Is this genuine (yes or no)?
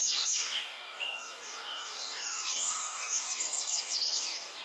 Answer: no